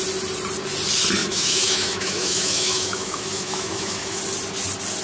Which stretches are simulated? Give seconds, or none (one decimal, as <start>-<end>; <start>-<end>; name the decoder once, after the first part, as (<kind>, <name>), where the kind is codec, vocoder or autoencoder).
1.2-4.2 (autoencoder, DAC-VAE)

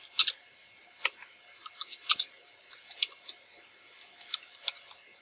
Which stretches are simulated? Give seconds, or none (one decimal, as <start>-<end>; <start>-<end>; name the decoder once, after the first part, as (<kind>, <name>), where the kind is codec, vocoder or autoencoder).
none

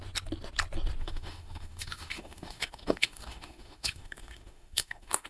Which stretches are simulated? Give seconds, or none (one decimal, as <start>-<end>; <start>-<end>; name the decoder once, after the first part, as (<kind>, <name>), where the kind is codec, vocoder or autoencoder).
1.0-5.3 (autoencoder, DAC-VAE)

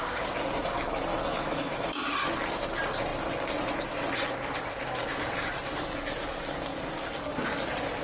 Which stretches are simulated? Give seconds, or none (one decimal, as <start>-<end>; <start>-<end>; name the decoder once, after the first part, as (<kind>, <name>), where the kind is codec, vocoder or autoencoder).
1.1-2.3 (autoencoder, DAC-VAE)

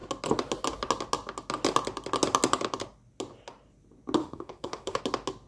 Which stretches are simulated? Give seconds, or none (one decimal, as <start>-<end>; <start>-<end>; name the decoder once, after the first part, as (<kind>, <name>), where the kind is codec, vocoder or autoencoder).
4.2-5.0 (autoencoder, DAC-VAE)